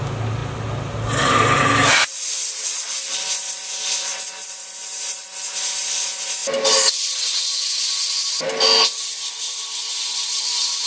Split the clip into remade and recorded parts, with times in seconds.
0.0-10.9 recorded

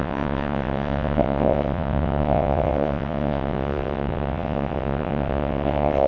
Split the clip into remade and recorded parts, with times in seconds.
0.0-6.1 remade

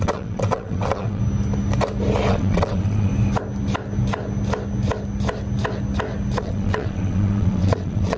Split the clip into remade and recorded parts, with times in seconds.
0.0-1.2 remade; 1.2-2.3 recorded; 2.3-3.1 remade; 3.1-6.4 recorded; 6.4-8.2 remade

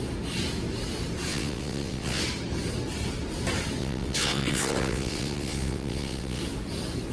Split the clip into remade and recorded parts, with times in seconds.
0.0-1.3 recorded; 1.3-2.2 remade; 2.2-3.8 recorded; 3.8-6.4 remade; 6.4-7.1 recorded

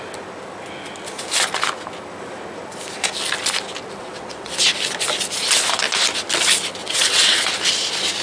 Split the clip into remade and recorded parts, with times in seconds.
0.0-4.0 recorded; 4.0-4.5 remade; 4.5-6.8 recorded; 6.8-7.5 remade; 7.5-8.2 recorded